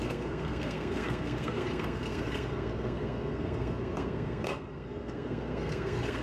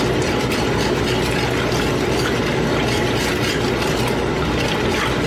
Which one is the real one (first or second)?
second